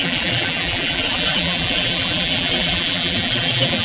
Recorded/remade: remade